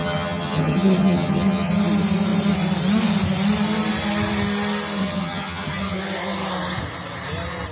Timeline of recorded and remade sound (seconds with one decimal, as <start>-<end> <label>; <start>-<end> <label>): 0.0-1.7 remade; 1.7-5.0 recorded; 5.0-6.0 remade; 6.0-7.7 recorded

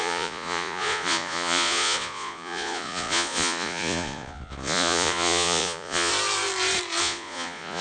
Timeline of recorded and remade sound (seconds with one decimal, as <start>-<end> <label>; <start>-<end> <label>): 0.0-6.1 remade; 6.1-7.0 recorded; 7.0-7.8 remade

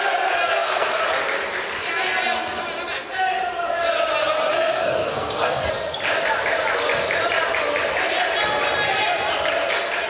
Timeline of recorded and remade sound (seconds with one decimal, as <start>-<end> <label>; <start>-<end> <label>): 0.0-0.5 recorded; 0.5-1.0 remade; 1.0-4.5 recorded; 4.5-5.7 remade; 5.7-10.1 recorded

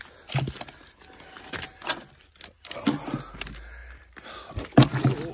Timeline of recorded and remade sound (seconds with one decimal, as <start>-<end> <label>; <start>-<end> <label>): 0.0-5.3 recorded

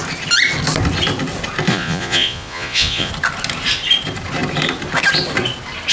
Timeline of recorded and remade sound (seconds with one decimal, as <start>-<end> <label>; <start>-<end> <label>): 0.0-1.7 recorded; 1.7-3.1 remade; 3.1-5.9 recorded

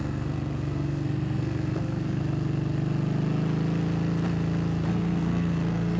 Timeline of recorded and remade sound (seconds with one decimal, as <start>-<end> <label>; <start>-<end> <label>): 0.0-2.2 remade; 2.2-4.9 recorded; 4.9-6.0 remade

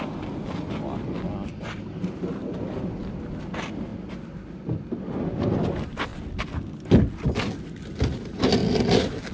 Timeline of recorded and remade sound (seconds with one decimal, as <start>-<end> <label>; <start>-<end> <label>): 0.0-9.3 recorded